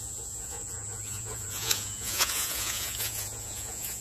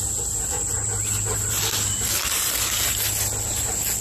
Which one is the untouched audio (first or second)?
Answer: second